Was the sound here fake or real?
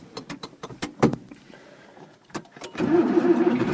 fake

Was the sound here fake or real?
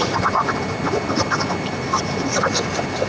real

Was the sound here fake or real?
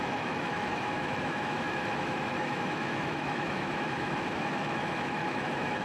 fake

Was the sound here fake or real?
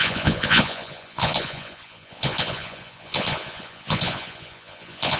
fake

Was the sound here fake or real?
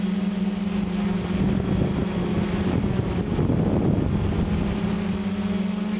real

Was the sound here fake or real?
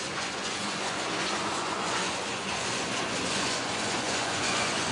fake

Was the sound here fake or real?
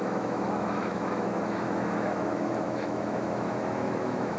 fake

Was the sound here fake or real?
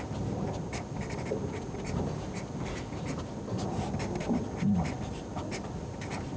real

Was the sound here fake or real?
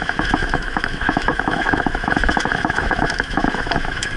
fake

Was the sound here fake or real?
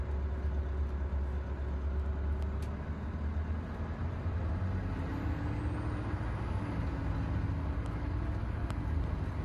real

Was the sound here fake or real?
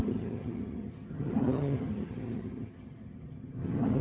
fake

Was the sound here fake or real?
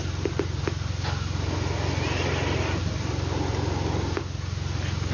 real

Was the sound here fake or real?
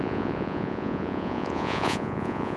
fake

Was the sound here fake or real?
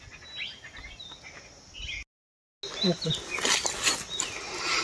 real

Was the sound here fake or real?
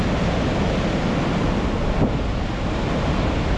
real